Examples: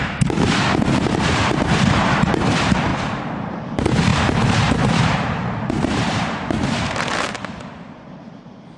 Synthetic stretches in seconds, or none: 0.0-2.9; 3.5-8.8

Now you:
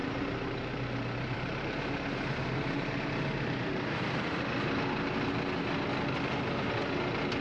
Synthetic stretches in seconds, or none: 0.0-4.4

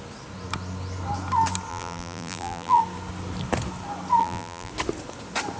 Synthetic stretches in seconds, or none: 1.7-2.8; 4.2-4.7

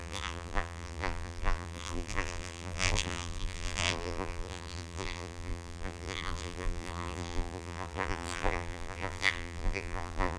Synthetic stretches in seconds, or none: 0.0-10.4

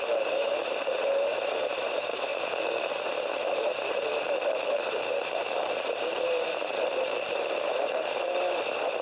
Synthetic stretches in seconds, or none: 0.0-2.3; 2.8-9.0

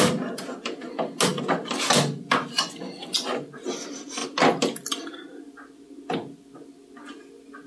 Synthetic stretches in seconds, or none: none